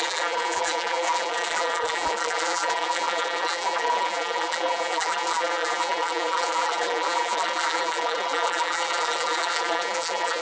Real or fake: fake